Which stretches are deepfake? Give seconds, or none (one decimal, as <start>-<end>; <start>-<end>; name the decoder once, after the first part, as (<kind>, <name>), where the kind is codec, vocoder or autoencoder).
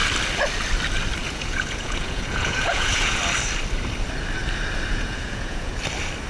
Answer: 1.2-3.2 (vocoder, Vocos); 4.9-5.7